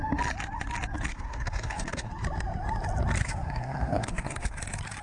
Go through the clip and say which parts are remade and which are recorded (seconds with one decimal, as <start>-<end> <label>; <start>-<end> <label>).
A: 0.0-1.1 recorded; 1.1-2.1 remade; 2.1-3.2 recorded; 3.2-4.6 remade; 4.6-5.0 recorded